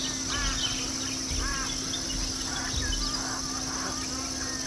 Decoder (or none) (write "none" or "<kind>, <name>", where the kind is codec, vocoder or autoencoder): none